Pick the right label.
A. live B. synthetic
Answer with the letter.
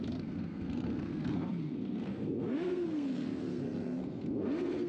B